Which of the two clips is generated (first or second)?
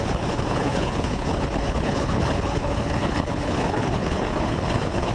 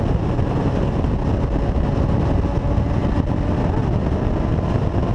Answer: first